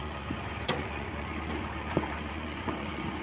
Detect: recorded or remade remade